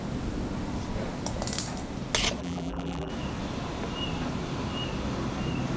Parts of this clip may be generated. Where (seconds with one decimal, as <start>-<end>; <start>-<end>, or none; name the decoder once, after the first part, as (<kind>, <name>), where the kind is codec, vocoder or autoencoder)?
2.4-3.1 (vocoder, BigVGAN v2)